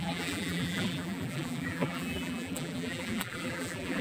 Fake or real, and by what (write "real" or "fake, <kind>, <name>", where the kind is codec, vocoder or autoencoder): fake, vocoder, BigVGAN v2